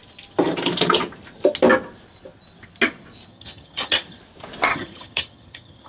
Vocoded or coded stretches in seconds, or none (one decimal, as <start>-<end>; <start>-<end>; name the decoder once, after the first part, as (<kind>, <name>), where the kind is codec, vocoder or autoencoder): 3.3-4.2 (vocoder, HiFi-GAN); 4.7-5.9